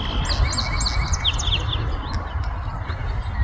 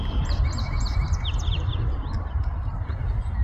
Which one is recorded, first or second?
first